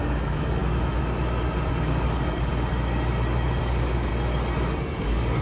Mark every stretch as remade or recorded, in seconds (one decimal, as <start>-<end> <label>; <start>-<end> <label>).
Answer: 0.0-0.6 remade; 0.6-1.7 recorded; 1.7-2.5 remade; 2.5-3.6 recorded; 3.6-4.1 remade; 4.1-5.0 recorded; 5.0-5.4 remade

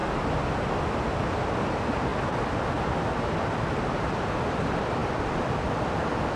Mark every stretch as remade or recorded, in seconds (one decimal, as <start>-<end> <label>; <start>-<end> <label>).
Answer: 0.0-6.4 recorded